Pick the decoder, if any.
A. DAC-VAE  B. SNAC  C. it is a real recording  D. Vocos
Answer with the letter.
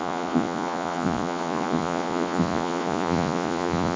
D